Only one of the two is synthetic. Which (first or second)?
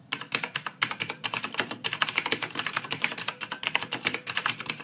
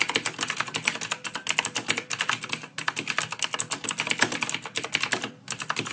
first